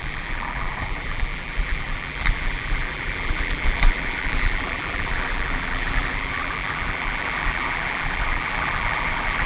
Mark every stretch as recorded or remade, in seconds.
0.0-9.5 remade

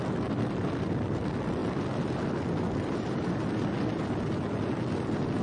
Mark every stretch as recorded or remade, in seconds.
0.0-5.4 recorded

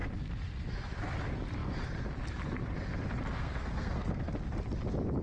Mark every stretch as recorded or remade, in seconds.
0.0-3.4 recorded; 3.4-4.3 remade; 4.3-5.2 recorded

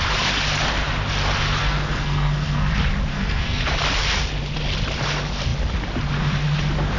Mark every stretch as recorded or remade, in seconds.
0.0-1.6 recorded; 1.6-2.7 remade; 2.7-3.1 recorded; 3.1-3.6 remade; 3.6-7.0 recorded

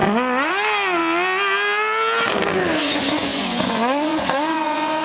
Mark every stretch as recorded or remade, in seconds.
0.0-0.5 recorded; 0.5-1.0 remade; 1.0-2.8 recorded; 2.8-5.0 remade

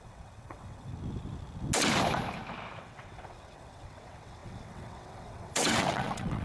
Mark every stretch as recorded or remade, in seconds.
0.0-0.9 remade; 0.9-2.8 recorded; 2.8-6.4 remade

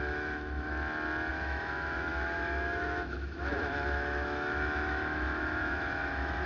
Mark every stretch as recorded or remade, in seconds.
0.0-0.7 remade; 0.7-1.3 recorded; 1.3-6.5 remade